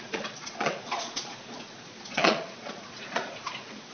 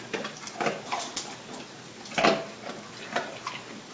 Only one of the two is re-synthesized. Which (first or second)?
first